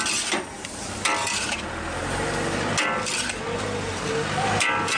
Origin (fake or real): real